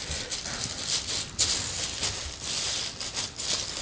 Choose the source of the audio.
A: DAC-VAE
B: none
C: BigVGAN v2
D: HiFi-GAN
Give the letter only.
B